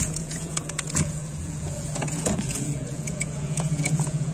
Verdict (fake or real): fake